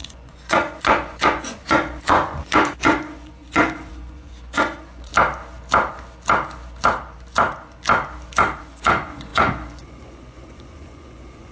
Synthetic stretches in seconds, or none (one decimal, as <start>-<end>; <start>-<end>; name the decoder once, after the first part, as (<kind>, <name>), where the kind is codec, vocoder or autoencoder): 0.0-5.1 (vocoder, Vocos); 8.6-11.5